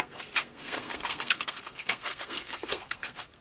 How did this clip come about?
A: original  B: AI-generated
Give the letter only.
B